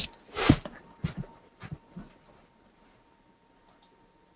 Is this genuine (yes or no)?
yes